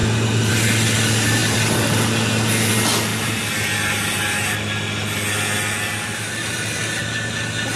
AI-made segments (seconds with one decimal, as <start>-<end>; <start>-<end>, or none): none

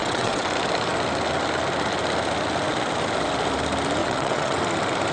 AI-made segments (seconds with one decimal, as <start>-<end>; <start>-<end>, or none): 0.0-0.5; 4.0-4.6

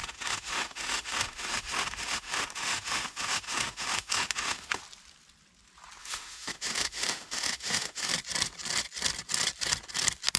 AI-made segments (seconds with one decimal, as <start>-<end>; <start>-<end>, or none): 0.0-4.8; 6.0-8.1

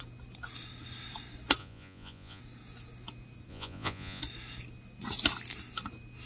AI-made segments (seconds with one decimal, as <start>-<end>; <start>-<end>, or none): 1.6-2.4; 3.5-4.2

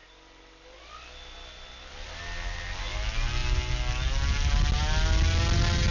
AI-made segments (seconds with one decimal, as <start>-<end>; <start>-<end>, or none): none

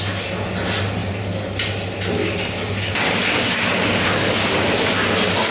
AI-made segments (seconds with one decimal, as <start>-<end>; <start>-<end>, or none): none

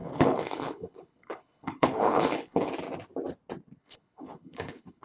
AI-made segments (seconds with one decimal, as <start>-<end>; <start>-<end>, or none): 0.0-2.7; 3.8-5.0